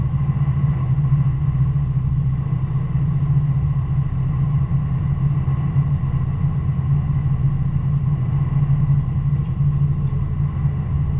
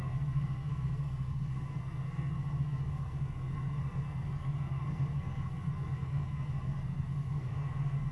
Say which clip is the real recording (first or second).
first